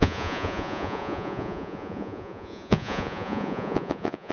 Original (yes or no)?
no